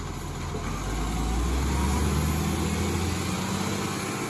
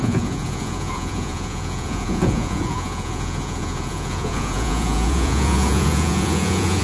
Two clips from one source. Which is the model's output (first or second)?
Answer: second